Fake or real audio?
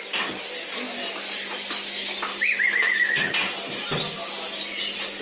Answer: real